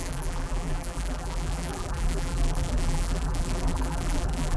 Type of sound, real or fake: fake